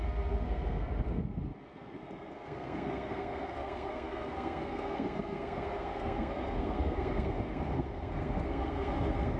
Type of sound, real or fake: fake